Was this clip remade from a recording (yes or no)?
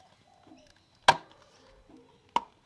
no